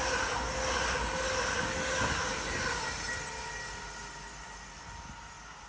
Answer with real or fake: real